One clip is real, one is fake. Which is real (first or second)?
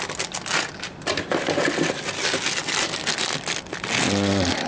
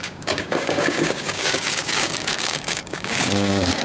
first